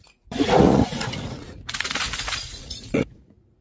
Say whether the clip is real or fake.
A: fake